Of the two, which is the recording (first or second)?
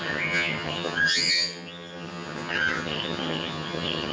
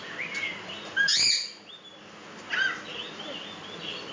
second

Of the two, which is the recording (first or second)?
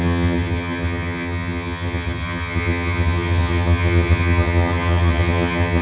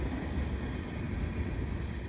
second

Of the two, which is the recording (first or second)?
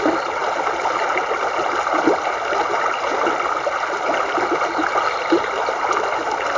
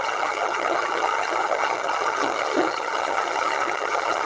first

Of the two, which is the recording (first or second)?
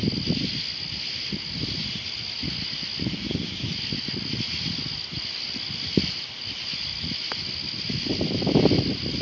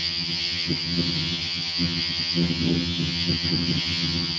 first